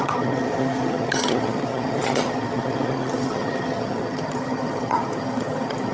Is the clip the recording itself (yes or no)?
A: no